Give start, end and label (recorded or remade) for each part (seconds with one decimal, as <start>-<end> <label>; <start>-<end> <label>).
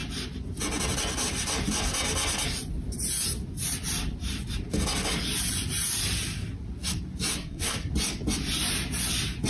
0.0-7.3 recorded; 7.3-7.9 remade; 7.9-9.5 recorded